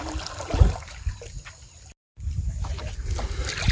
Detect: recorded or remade recorded